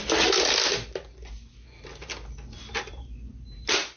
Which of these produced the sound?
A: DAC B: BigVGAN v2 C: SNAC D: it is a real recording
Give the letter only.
D